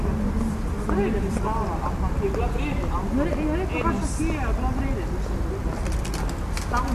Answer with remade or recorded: recorded